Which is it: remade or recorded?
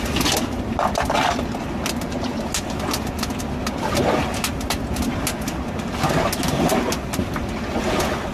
recorded